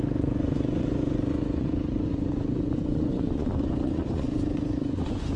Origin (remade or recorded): remade